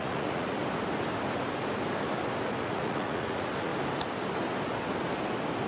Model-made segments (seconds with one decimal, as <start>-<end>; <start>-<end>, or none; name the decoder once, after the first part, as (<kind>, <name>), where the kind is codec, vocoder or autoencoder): 0.0-0.6 (vocoder, Vocos); 2.6-3.7